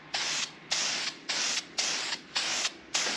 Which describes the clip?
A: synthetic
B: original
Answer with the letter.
A